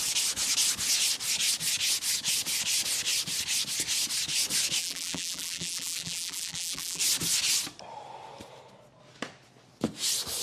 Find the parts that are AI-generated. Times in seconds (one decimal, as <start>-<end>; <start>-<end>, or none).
4.8-7.0